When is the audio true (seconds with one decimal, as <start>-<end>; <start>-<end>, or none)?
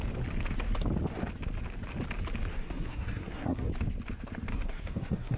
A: 0.0-2.5; 3.7-4.5